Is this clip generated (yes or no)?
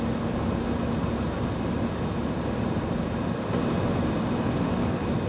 no